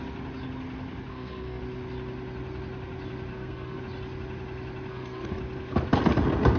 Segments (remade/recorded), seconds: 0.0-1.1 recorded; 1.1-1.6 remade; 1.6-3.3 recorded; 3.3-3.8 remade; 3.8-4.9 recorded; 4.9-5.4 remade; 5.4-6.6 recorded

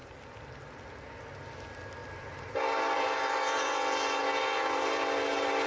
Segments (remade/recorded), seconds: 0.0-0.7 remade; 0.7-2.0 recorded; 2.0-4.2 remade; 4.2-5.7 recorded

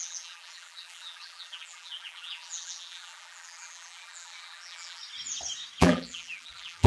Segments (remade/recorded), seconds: 0.0-5.0 remade; 5.0-5.8 recorded; 5.8-6.9 remade

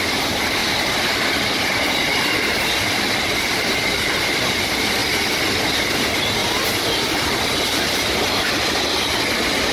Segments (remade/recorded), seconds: 0.0-0.6 recorded; 0.6-1.2 remade; 1.2-5.0 recorded; 5.0-5.9 remade; 5.9-6.4 recorded; 6.4-8.5 remade; 8.5-9.7 recorded

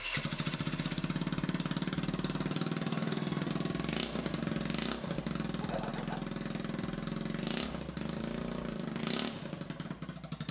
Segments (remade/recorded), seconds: 0.0-2.9 recorded; 2.9-3.5 remade; 3.5-10.5 recorded